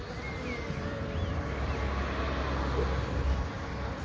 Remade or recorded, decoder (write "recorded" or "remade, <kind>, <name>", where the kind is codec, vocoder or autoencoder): recorded